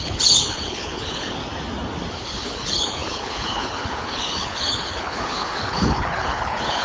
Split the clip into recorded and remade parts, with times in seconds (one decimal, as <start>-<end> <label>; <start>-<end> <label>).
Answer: 0.0-1.4 remade; 1.4-2.1 recorded; 2.1-6.8 remade